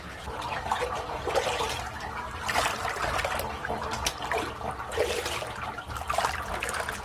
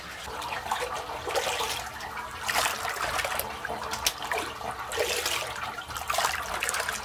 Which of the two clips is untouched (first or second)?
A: second